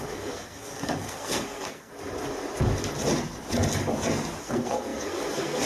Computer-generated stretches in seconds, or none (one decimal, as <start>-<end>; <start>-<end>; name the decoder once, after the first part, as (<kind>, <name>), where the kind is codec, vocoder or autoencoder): 0.0-1.9 (codec, SNAC); 4.4-5.7